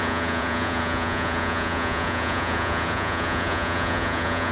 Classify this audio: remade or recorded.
remade